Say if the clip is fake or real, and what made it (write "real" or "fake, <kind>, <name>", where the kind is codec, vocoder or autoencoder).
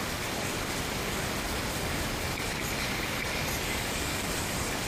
fake, codec, DAC